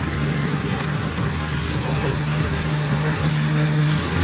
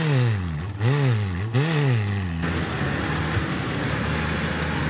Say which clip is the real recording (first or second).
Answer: second